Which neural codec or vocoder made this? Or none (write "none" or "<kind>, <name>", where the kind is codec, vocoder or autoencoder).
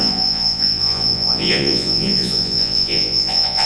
vocoder, Vocos